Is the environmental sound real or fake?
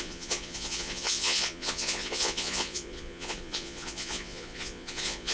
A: fake